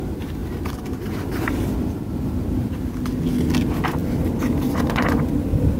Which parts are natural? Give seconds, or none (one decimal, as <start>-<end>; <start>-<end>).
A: 0.0-0.4; 2.9-4.0; 4.7-5.8